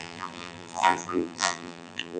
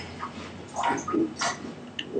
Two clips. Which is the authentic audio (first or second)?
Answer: second